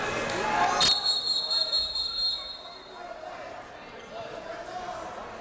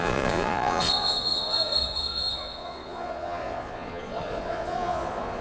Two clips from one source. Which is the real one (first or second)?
first